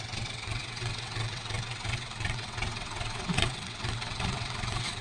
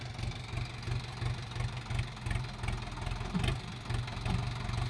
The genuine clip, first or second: second